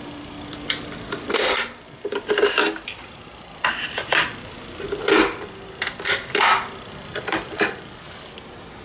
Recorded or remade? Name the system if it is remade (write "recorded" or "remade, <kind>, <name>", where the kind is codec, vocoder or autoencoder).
recorded